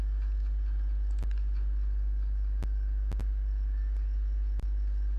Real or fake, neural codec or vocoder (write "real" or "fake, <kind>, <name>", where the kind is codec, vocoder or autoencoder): real